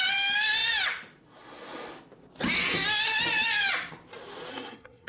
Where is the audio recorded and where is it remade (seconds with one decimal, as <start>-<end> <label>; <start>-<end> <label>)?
0.0-4.5 recorded; 4.5-5.1 remade